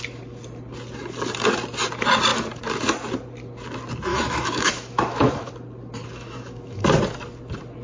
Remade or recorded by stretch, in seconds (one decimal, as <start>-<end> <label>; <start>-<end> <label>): 0.0-4.1 recorded; 4.1-5.5 remade; 5.5-6.0 recorded; 6.0-6.8 remade; 6.8-7.8 recorded